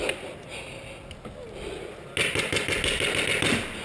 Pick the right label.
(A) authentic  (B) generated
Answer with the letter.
A